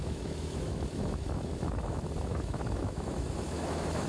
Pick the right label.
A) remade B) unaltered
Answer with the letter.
A